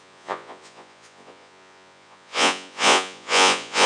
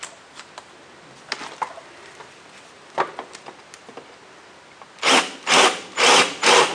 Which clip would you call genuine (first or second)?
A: second